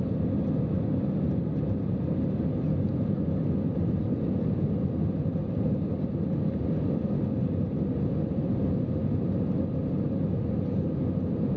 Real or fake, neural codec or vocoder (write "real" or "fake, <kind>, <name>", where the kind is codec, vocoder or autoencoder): real